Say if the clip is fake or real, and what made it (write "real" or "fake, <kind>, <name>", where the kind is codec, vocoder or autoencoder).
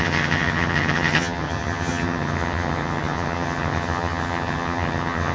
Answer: fake, vocoder, HiFi-GAN